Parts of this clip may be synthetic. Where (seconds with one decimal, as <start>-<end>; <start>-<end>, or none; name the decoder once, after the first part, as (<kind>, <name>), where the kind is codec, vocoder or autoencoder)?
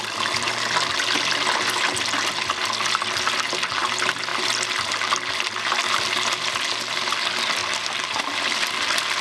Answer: 4.3-4.9 (vocoder, BigVGAN v2); 7.6-8.2